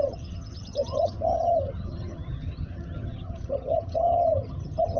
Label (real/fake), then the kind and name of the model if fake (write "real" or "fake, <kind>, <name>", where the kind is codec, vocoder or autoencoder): fake, vocoder, HiFi-GAN